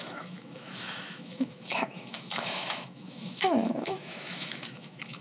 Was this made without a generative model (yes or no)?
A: no